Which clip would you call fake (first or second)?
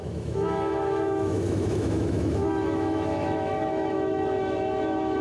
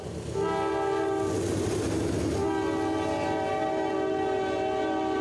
first